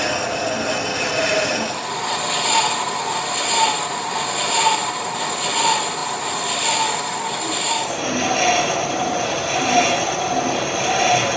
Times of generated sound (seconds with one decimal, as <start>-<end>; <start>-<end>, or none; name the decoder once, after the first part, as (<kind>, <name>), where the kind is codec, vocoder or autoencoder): none